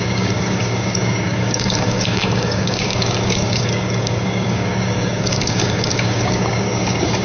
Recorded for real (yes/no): no